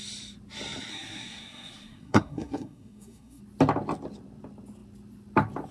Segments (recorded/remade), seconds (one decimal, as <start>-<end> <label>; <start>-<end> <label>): 0.0-0.9 recorded; 0.9-3.4 remade; 3.4-5.7 recorded